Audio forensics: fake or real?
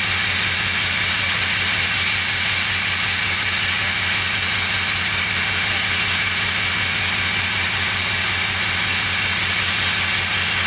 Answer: real